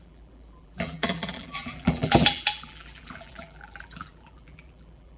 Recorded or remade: remade